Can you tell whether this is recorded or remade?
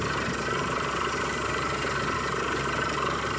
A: remade